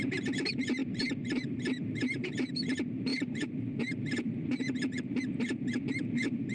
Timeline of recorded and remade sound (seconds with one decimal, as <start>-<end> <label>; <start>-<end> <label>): 0.0-6.5 remade